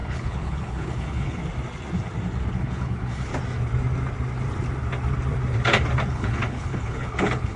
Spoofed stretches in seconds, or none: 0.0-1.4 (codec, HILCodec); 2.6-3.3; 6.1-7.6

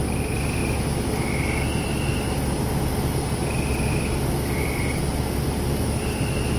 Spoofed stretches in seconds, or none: none

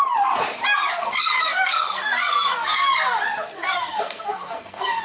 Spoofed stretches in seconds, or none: 1.0-2.9 (codec, SNAC); 3.5-5.0